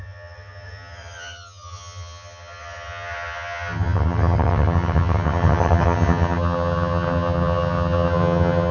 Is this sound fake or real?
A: fake